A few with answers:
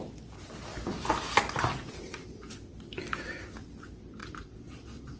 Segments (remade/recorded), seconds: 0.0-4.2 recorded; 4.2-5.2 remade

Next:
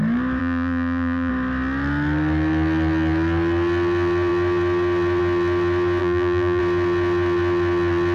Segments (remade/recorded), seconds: 0.0-0.4 recorded; 0.4-1.3 remade; 1.3-6.0 recorded; 6.0-6.6 remade; 6.6-8.1 recorded

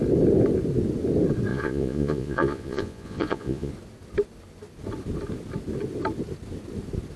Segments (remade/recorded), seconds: 0.0-1.5 recorded; 1.5-3.7 remade; 3.7-7.2 recorded